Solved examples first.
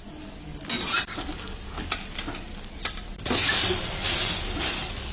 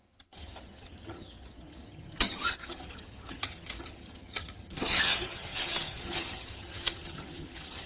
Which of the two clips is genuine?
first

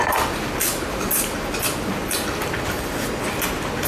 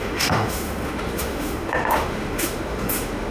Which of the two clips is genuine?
first